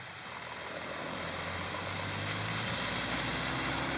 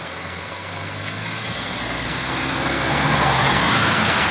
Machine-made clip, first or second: second